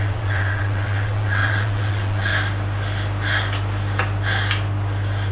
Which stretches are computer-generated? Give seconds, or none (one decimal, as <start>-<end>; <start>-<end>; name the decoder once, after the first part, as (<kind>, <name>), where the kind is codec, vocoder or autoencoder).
0.0-2.3 (vocoder, WaveNeXt)